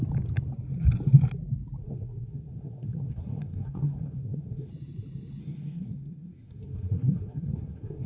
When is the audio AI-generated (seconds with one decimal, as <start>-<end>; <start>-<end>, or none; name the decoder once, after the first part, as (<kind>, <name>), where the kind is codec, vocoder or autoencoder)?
1.8-4.7 (codec, SNAC); 5.4-8.1

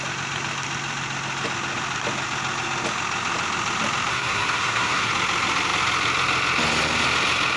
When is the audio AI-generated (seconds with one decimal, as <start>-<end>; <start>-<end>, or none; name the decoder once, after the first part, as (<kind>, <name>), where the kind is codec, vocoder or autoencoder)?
4.1-5.1 (codec, SNAC)

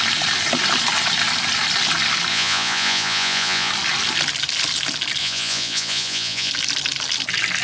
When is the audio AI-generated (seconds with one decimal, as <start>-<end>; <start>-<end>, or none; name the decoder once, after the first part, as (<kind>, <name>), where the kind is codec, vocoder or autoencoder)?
2.3-3.7 (vocoder, Vocos); 5.2-6.5

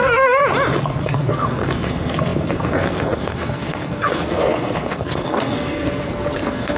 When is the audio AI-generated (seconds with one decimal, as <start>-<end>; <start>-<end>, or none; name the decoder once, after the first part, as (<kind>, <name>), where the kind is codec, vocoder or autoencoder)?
0.0-0.4 (codec, SNAC); 1.0-6.8

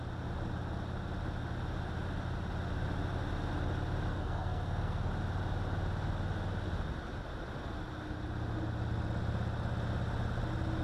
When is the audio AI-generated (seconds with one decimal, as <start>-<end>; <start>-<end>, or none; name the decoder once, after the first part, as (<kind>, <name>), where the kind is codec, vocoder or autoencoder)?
4.1-5.1 (codec, SNAC)

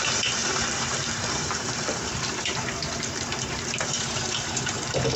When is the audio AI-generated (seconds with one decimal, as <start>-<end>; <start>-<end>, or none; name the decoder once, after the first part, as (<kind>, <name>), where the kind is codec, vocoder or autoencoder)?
0.0-5.2 (vocoder, BigVGAN v2)